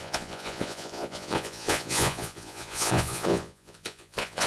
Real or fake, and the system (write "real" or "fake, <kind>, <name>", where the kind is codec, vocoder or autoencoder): fake, vocoder, Vocos